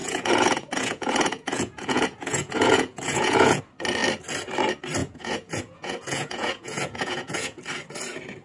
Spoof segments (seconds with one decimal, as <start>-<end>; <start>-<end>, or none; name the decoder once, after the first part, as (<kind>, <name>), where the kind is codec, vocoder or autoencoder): 0.0-3.6 (vocoder, Vocos); 5.0-7.6